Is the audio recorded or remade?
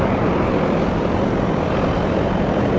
recorded